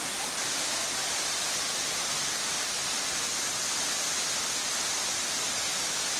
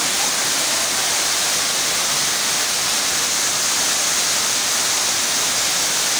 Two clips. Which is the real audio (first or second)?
second